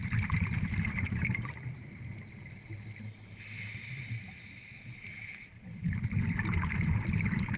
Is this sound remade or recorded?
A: recorded